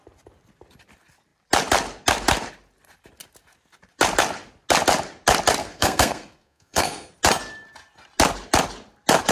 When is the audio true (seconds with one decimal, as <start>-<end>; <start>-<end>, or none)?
0.0-5.6; 7.1-9.3